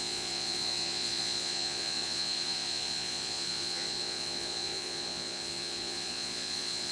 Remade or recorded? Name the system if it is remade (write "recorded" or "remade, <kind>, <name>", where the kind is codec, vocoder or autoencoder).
remade, vocoder, Vocos